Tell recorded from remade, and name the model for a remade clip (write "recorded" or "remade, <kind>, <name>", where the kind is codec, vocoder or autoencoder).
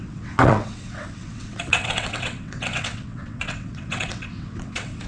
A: remade, vocoder, WaveNeXt